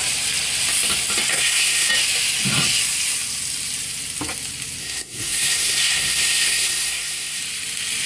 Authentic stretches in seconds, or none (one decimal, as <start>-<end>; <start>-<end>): 0.0-1.3; 1.9-4.8; 7.4-8.1